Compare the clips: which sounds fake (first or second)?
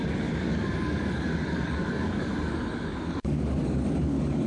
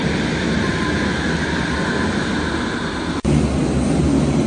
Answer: first